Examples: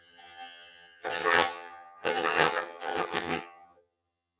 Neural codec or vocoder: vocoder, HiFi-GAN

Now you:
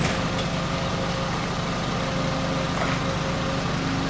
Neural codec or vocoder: none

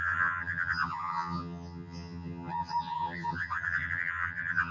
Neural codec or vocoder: vocoder, HiFi-GAN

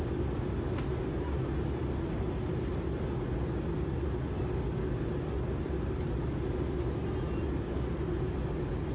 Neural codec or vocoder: none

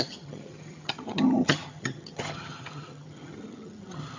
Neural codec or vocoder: vocoder, HiFi-GAN